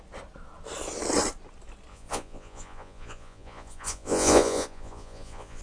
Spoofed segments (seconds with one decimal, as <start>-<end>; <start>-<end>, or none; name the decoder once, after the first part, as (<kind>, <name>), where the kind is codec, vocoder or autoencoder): 1.9-5.6 (vocoder, Vocos)